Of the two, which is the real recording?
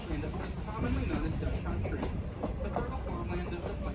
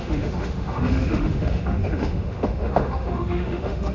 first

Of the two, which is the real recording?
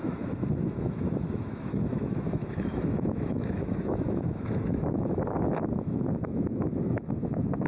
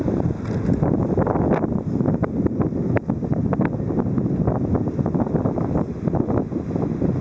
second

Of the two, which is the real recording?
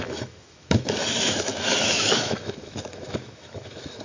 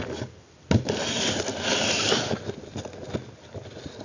second